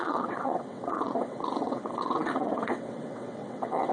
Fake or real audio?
fake